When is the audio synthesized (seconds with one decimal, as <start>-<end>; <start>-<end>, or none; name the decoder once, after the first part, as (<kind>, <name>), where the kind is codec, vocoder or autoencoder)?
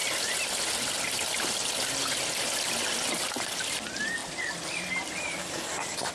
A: none